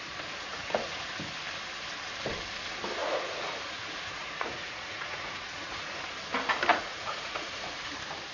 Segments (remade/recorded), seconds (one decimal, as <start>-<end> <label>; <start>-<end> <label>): 0.0-0.5 recorded; 0.5-1.0 remade; 1.0-3.0 recorded; 3.0-6.0 remade; 6.0-6.7 recorded; 6.7-7.9 remade; 7.9-8.3 recorded